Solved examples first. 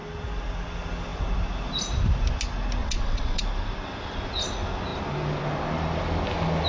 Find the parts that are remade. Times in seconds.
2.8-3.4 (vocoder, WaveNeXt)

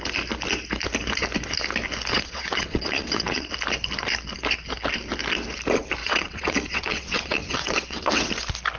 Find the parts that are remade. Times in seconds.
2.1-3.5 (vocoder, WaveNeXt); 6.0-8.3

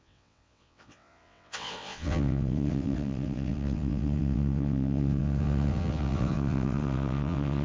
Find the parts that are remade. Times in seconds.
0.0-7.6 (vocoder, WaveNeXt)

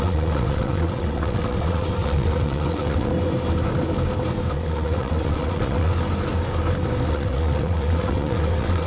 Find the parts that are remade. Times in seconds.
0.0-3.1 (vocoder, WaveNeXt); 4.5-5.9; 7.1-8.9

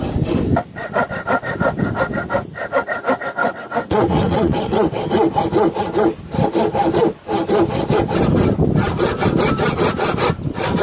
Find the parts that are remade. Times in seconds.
3.4-5.0 (vocoder, WaveNeXt)